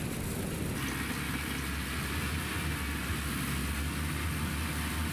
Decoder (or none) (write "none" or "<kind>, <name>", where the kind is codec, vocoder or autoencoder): none